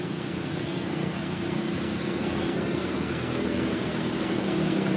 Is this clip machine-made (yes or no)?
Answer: yes